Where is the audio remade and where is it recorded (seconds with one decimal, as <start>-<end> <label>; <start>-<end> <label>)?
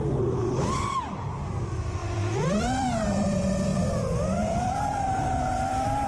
0.0-6.1 remade